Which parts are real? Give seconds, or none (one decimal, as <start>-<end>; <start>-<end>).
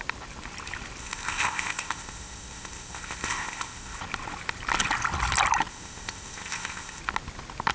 0.0-1.0; 4.0-5.7; 7.0-7.7